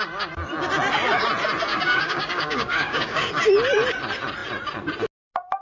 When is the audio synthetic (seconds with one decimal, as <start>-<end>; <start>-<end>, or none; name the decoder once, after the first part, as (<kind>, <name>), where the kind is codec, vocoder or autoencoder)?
1.7-3.3 (codec, DAC)